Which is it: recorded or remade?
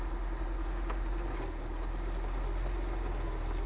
recorded